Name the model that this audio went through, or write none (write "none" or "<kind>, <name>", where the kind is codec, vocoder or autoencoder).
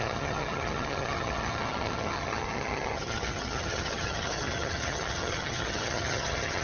vocoder, HiFi-GAN